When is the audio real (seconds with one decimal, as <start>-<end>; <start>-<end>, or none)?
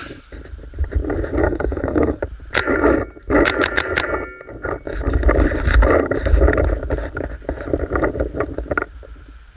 0.0-1.4; 2.2-9.6